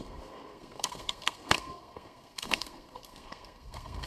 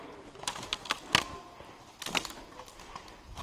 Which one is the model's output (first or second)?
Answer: first